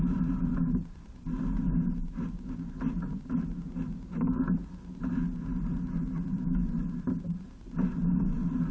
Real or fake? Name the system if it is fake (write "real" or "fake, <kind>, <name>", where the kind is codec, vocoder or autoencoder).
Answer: real